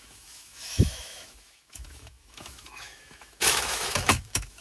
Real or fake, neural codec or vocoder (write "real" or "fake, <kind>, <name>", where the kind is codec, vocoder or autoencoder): fake, autoencoder, DAC-VAE